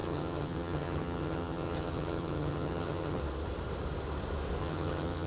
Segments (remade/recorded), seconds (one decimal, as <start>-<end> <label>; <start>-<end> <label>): 0.0-3.2 remade; 3.2-4.6 recorded; 4.6-5.3 remade